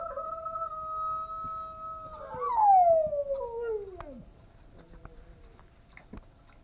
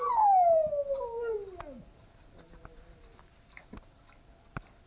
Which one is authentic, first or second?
first